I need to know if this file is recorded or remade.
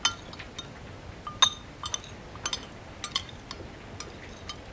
recorded